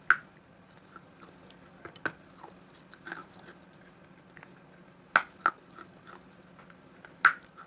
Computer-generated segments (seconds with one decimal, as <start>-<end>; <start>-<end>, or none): none